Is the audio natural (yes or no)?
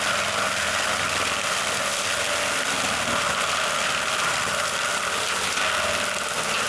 yes